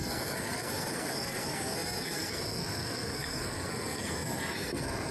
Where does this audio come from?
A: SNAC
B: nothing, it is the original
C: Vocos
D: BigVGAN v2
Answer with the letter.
A